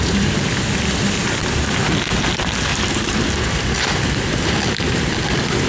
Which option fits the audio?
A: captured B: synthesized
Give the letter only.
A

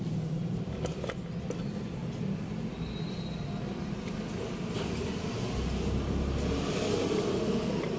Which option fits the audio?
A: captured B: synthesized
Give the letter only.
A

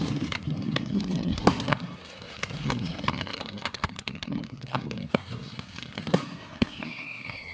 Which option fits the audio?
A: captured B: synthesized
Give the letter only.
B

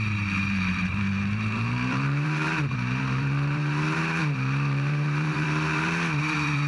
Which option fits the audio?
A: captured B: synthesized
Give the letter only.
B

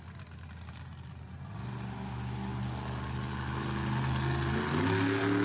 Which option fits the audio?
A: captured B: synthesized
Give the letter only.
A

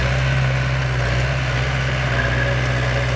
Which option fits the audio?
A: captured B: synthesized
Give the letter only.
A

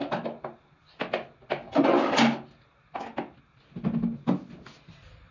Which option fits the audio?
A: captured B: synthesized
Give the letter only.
A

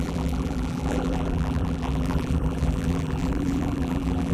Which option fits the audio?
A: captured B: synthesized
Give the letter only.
B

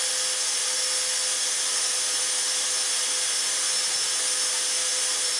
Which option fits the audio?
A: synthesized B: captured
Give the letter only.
B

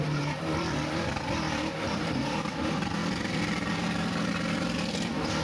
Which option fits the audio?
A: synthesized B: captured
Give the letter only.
A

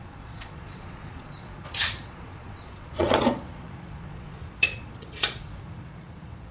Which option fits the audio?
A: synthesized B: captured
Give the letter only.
A